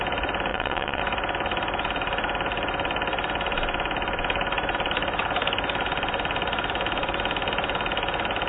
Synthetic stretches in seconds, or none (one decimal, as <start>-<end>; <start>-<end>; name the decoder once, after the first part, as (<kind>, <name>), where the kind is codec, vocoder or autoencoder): 0.5-1.0 (vocoder, WaveNeXt)